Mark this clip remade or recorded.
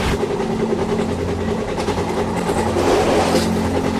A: recorded